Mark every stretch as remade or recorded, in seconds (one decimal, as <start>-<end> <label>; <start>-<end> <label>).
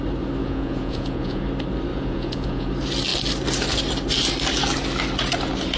0.0-0.4 recorded; 0.4-1.4 remade; 1.4-1.9 recorded; 1.9-2.7 remade; 2.7-5.8 recorded